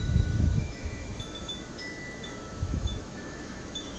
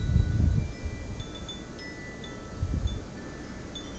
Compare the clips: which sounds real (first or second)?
second